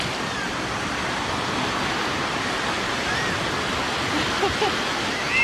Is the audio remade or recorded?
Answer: recorded